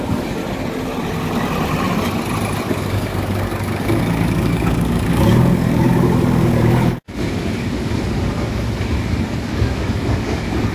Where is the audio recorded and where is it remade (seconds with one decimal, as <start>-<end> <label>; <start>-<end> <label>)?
0.0-0.4 remade; 0.4-2.6 recorded; 2.6-10.7 remade